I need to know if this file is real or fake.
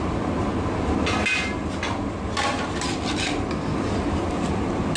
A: real